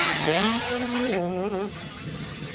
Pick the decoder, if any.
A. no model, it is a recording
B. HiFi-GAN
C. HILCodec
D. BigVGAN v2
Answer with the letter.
B